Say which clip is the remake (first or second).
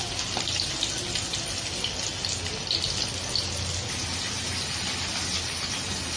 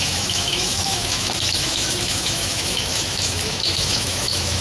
second